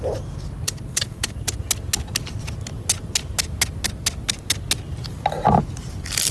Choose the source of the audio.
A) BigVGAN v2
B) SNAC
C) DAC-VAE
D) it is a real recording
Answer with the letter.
D